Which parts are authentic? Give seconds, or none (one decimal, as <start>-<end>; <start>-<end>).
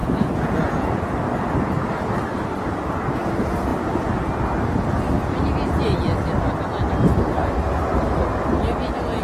1.1-9.2